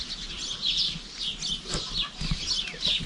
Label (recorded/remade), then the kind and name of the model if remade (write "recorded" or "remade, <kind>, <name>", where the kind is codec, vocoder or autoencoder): recorded